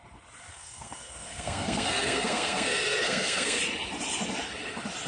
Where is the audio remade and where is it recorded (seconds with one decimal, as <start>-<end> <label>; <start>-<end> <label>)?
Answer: 0.0-0.5 recorded; 0.5-3.6 remade; 3.6-5.1 recorded